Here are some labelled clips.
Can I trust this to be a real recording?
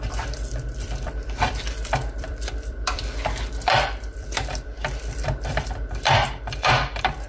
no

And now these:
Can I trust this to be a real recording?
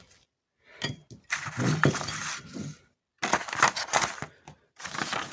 yes